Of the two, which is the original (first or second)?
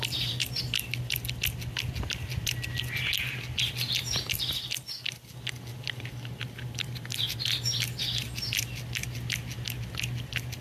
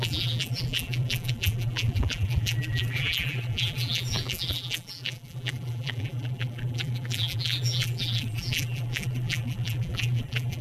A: first